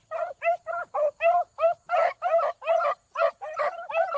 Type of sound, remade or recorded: recorded